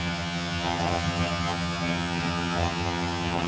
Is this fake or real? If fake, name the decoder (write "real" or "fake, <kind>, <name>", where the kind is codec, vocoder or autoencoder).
fake, vocoder, HiFi-GAN